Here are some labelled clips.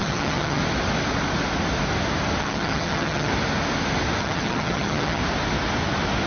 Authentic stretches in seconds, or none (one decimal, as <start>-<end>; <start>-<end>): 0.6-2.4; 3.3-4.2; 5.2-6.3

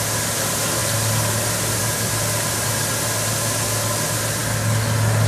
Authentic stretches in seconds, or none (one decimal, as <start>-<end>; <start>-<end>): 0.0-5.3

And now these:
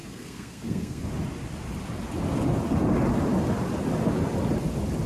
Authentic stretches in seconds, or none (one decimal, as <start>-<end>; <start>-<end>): 1.0-5.1

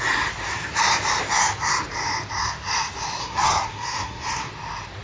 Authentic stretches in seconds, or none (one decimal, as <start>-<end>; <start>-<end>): 0.0-3.2; 4.5-5.0

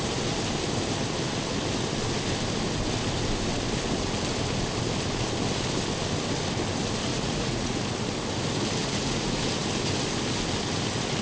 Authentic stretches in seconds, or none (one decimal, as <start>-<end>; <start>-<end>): 0.0-7.1; 7.8-8.8; 9.4-11.2